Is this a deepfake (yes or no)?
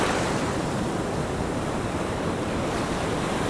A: yes